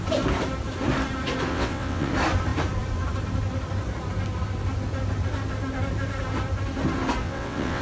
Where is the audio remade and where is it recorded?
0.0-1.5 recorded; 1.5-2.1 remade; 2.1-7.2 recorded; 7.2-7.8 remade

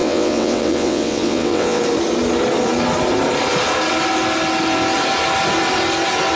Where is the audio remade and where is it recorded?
0.0-1.8 remade; 1.8-6.4 recorded

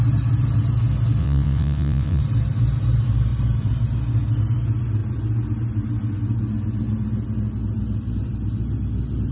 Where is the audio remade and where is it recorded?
0.0-1.2 recorded; 1.2-2.2 remade; 2.2-9.3 recorded

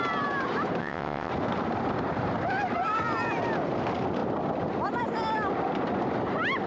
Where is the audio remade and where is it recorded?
0.0-0.8 recorded; 0.8-1.3 remade; 1.3-6.7 recorded

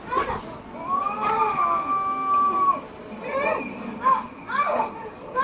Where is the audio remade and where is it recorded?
0.0-5.4 recorded

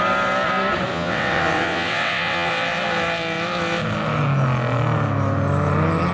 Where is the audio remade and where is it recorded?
0.0-0.9 recorded; 0.9-2.5 remade; 2.5-6.1 recorded